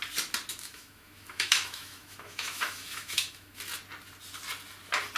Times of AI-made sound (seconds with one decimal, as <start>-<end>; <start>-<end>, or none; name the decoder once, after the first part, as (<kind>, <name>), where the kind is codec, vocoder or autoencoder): 0.5-3.6 (autoencoder, DAC-VAE)